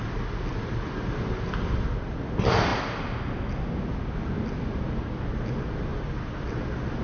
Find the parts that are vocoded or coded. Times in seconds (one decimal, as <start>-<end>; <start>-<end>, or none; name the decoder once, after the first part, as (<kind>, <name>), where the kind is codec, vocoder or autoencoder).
none